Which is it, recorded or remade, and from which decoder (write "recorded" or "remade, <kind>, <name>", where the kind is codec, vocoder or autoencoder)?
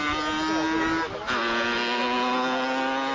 recorded